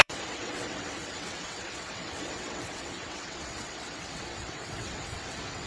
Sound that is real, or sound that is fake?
fake